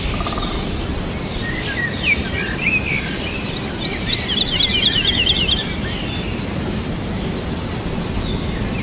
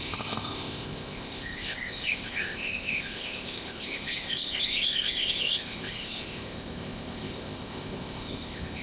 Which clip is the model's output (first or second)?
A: second